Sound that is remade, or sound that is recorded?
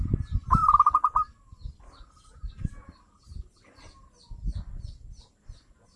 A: recorded